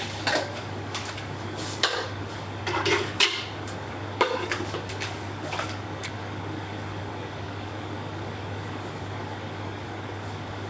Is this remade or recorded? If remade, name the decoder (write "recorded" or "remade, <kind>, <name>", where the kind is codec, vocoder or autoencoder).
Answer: remade, codec, DAC